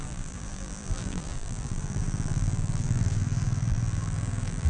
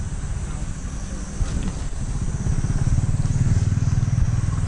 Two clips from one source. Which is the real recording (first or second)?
second